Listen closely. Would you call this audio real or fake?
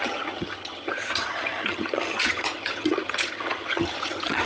fake